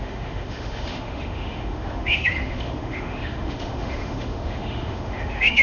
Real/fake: fake